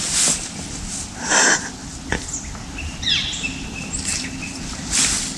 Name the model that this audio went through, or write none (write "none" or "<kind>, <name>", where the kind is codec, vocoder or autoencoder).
vocoder, BigVGAN v2